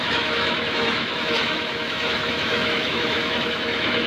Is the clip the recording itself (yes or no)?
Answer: no